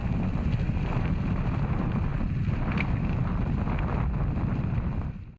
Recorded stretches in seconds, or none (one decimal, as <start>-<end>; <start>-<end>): 0.0-5.4